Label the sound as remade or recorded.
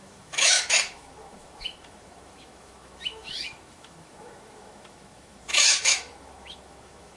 remade